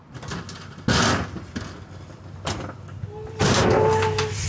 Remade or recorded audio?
recorded